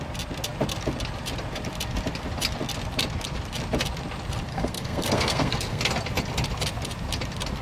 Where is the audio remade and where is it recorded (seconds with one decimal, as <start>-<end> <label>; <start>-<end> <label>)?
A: 0.0-4.5 recorded; 4.5-5.8 remade; 5.8-7.6 recorded